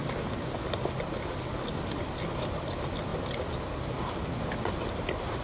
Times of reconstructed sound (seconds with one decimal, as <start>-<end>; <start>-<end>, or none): none